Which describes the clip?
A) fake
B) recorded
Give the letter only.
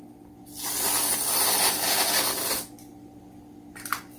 B